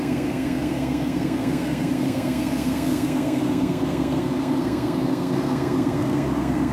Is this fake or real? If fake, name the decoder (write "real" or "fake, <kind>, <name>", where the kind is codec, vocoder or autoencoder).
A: fake, codec, SNAC